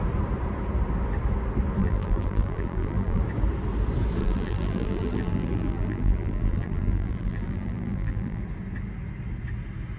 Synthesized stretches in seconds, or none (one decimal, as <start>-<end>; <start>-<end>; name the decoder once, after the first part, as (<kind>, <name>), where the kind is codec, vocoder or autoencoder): 1.8-3.2 (vocoder, BigVGAN v2); 4.2-8.4